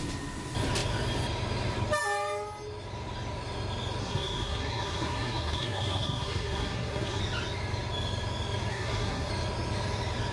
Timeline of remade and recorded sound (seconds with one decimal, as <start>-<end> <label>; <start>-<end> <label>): 0.0-4.0 recorded; 4.0-7.2 remade; 7.2-8.7 recorded; 8.7-9.3 remade; 9.3-10.3 recorded